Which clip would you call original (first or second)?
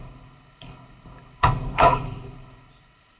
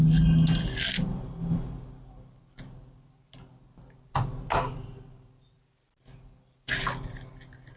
second